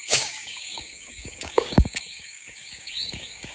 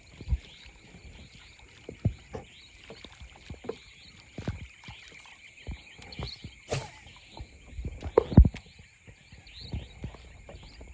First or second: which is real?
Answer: second